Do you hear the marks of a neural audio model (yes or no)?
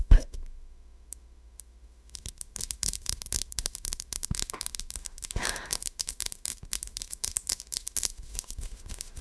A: yes